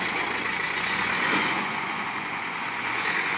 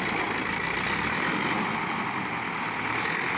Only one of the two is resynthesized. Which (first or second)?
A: first